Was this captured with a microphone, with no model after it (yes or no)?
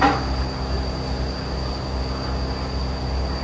yes